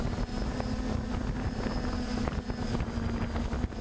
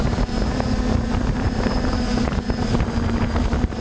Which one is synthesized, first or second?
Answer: second